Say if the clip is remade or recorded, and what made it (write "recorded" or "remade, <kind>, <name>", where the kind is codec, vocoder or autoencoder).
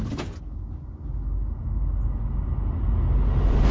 recorded